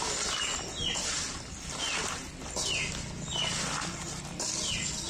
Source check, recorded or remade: recorded